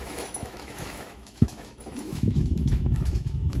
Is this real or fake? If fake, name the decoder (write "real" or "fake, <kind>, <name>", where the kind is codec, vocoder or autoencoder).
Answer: fake, autoencoder, DAC-VAE